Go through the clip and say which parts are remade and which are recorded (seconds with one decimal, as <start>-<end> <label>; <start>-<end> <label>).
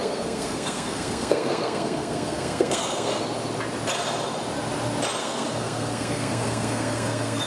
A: 0.0-3.2 remade; 3.2-5.2 recorded; 5.2-7.5 remade